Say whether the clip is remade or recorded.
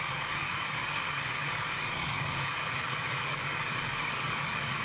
remade